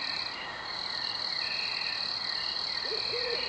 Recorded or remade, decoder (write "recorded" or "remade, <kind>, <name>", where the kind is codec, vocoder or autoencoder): recorded